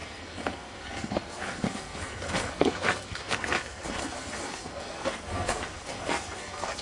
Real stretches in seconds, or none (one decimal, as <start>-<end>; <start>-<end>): none